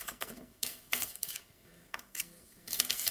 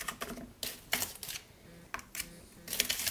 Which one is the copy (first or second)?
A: first